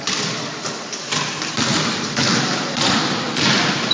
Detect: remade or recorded recorded